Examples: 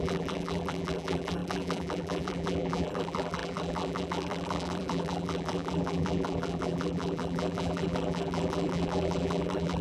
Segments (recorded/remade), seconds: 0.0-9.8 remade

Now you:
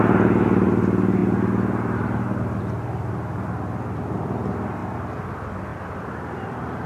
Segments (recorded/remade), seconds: 0.0-5.7 recorded; 5.7-6.9 remade

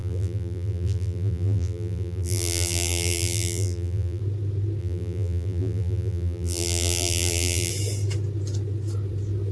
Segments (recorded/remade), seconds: 0.0-4.2 remade; 4.2-4.8 recorded; 4.8-7.7 remade; 7.7-9.5 recorded

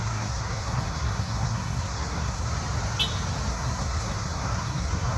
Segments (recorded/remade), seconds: 0.0-2.5 remade; 2.5-3.5 recorded; 3.5-5.2 remade